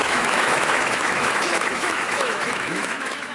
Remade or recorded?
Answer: remade